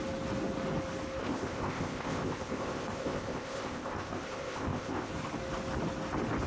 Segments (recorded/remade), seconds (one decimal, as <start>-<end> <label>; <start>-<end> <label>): 0.0-1.2 recorded; 1.2-5.1 remade; 5.1-6.5 recorded